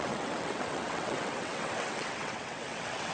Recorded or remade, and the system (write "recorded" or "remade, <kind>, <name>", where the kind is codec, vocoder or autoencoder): remade, vocoder, WaveNeXt